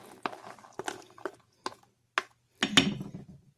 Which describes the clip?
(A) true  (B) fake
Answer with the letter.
A